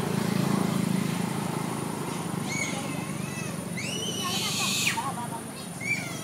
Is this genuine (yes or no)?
no